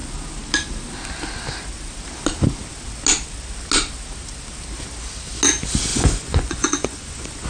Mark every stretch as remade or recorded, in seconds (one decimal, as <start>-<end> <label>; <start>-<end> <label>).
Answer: 0.0-5.9 recorded; 5.9-7.5 remade